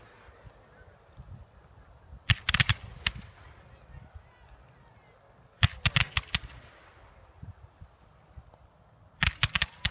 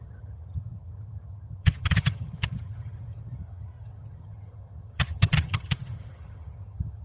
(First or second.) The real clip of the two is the first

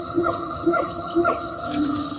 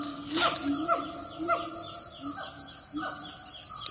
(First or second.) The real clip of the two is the second